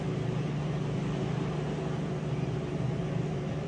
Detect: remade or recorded remade